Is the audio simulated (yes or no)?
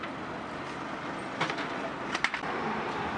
no